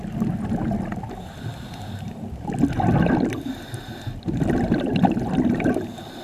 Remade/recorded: recorded